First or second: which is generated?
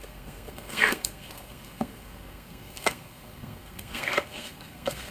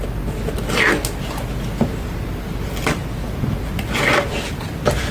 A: first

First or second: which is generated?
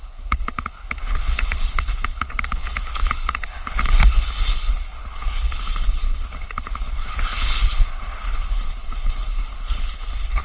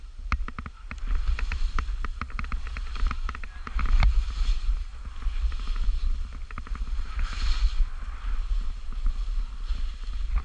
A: first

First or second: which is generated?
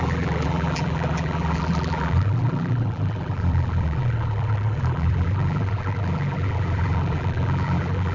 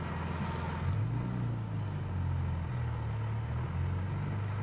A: first